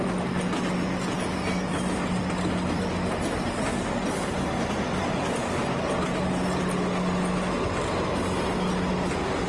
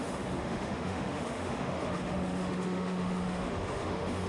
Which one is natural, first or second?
first